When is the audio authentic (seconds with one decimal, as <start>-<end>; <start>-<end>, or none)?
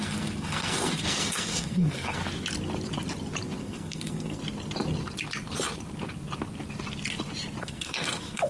2.2-3.6; 4.4-7.6